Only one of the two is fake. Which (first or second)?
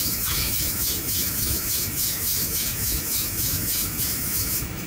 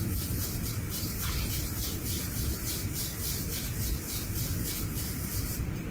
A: first